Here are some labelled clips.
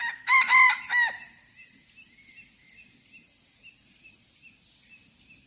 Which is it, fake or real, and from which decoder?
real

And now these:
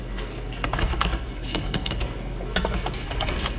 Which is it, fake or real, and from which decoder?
fake, codec, SNAC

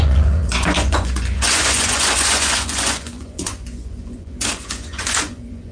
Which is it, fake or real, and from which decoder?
fake, vocoder, Vocos